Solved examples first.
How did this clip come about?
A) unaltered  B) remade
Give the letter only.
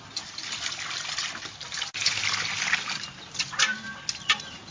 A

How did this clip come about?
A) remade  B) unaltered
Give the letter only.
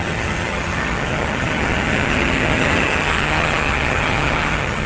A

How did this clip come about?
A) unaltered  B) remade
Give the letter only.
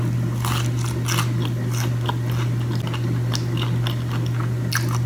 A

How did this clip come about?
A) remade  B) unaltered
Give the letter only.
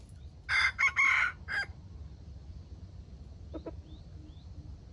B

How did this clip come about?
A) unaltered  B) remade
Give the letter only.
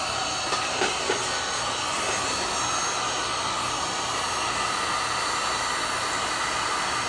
A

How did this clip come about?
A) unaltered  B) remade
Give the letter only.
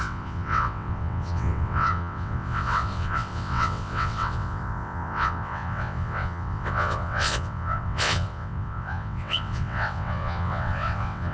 B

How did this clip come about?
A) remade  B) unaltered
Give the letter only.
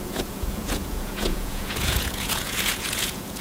A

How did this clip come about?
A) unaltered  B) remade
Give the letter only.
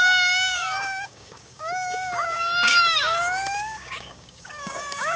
B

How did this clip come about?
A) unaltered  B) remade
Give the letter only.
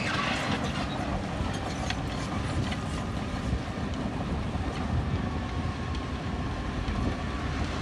A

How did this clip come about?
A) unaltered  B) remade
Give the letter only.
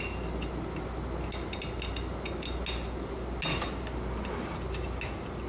A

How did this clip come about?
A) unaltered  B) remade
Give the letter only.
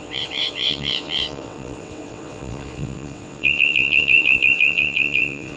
B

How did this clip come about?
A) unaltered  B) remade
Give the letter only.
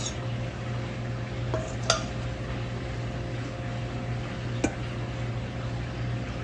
A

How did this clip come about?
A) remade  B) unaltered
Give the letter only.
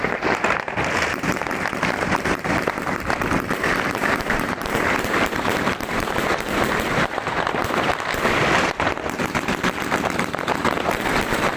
A